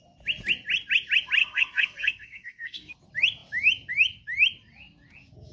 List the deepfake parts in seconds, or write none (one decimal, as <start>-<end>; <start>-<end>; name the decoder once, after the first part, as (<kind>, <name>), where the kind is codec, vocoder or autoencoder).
1.4-2.9 (codec, SNAC)